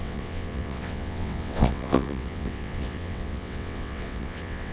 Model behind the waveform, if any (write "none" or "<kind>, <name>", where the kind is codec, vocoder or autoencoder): vocoder, WaveNeXt